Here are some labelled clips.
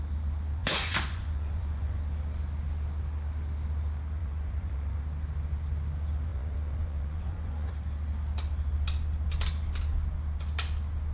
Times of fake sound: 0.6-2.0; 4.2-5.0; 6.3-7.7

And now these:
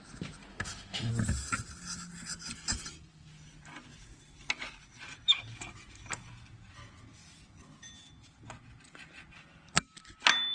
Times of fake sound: 0.5-1.1